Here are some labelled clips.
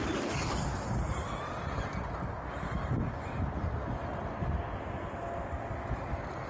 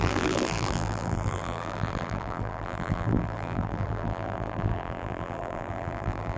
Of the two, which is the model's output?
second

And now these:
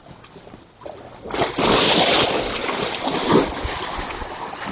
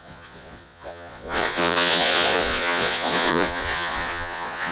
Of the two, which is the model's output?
second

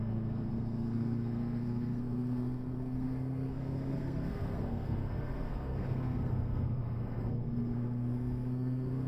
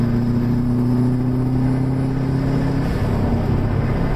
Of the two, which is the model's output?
first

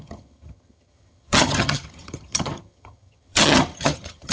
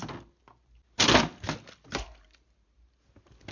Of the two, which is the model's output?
first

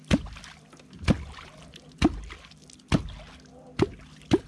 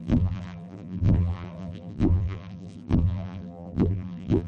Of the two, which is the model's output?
second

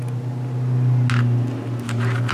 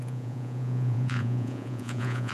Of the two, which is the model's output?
second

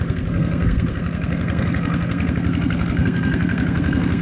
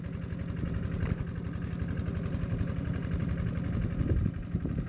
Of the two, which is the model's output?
first